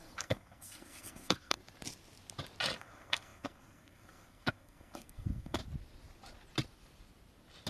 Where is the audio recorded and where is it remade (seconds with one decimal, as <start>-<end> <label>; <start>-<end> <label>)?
0.0-1.6 remade; 1.6-2.8 recorded; 2.8-5.6 remade; 5.6-7.7 recorded